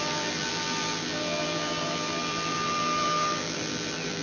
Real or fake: fake